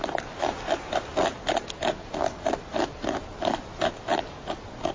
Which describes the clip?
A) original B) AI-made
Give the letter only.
A